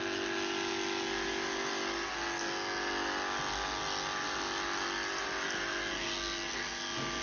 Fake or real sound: real